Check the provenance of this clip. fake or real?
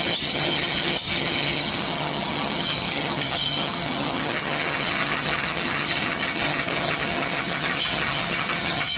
fake